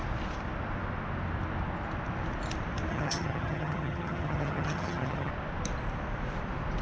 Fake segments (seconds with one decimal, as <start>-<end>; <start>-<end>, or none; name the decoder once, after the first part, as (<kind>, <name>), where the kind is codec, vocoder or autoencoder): 2.9-5.3 (vocoder, HiFi-GAN)